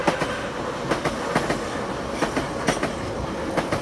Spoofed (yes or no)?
no